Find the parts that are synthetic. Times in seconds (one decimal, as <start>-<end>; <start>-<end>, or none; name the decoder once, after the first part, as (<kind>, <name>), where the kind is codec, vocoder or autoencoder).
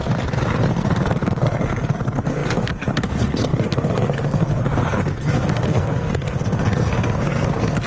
0.7-7.9 (codec, SNAC)